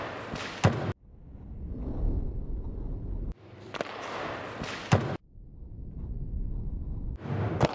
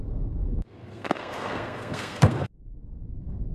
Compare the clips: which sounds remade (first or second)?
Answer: second